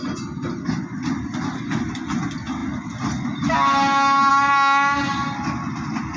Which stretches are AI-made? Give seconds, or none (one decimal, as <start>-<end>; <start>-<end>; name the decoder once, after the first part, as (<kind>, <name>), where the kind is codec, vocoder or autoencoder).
none